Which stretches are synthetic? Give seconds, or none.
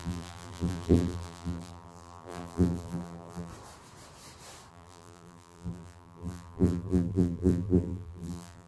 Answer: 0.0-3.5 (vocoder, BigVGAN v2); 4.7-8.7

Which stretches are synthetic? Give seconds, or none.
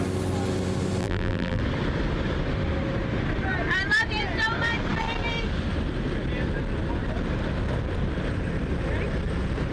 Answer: 1.0-1.6 (vocoder, BigVGAN v2)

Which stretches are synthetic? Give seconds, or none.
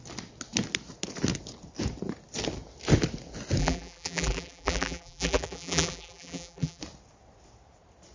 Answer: 3.6-6.8 (vocoder, BigVGAN v2)